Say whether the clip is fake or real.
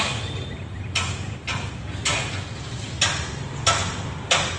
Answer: real